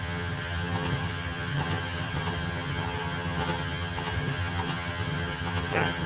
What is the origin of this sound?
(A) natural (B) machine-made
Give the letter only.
B